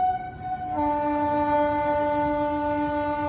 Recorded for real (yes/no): yes